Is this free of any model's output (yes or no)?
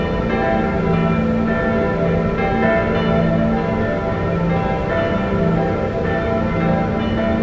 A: yes